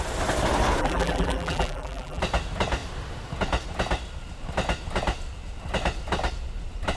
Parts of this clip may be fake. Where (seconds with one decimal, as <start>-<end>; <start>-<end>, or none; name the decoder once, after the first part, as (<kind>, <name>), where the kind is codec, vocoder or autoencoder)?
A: 0.8-2.2 (vocoder, BigVGAN v2)